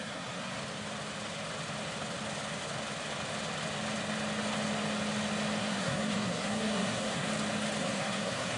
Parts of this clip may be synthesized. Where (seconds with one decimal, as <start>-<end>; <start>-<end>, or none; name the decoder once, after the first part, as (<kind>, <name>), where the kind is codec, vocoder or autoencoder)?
0.0-0.6 (codec, SNAC); 5.6-7.3; 7.8-8.6